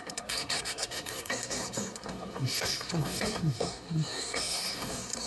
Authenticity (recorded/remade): remade